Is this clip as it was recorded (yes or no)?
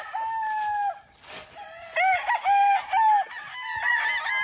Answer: yes